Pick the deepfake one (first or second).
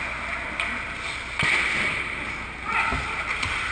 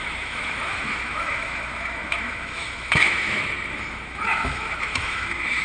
second